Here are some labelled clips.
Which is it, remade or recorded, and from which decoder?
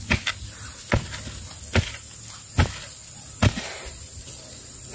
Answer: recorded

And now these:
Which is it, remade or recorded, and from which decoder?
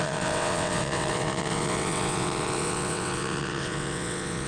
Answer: remade, vocoder, WaveNeXt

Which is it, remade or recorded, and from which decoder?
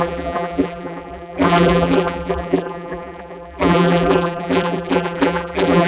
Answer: remade, vocoder, BigVGAN v2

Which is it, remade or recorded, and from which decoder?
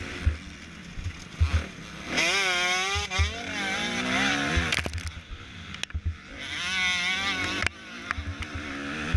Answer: recorded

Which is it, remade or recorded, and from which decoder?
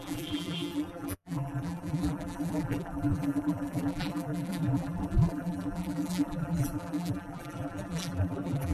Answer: remade, vocoder, BigVGAN v2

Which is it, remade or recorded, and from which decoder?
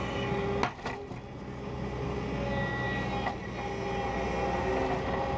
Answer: recorded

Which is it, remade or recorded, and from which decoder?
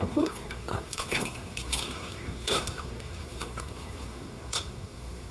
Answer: remade, codec, SNAC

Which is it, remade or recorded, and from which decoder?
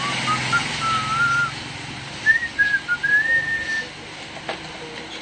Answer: recorded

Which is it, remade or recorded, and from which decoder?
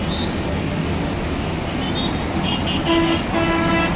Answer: recorded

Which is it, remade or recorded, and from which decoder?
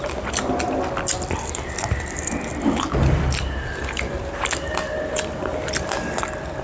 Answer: remade, vocoder, BigVGAN v2